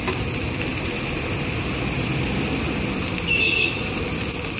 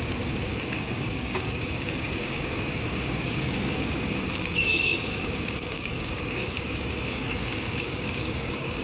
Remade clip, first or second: second